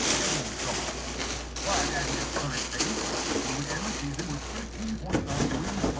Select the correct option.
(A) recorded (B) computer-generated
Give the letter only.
A